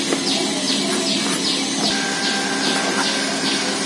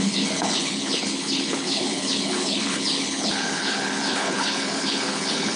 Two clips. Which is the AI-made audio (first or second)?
second